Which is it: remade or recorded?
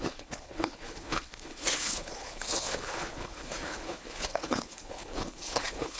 remade